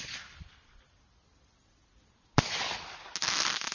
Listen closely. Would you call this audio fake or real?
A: real